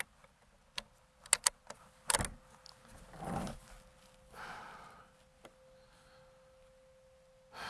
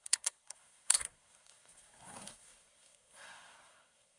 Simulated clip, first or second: second